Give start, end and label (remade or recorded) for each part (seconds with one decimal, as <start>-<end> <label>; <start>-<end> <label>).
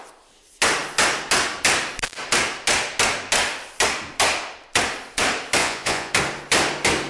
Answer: 0.0-5.6 recorded; 5.6-6.1 remade; 6.1-7.1 recorded